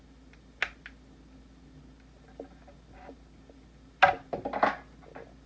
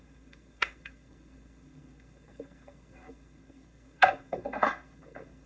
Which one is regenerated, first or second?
second